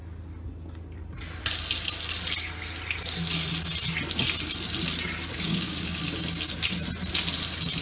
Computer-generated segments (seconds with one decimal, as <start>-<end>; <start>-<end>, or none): 5.3-6.0